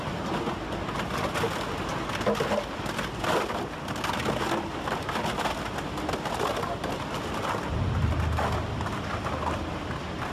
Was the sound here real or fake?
real